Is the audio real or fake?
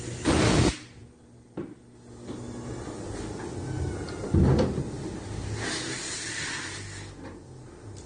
real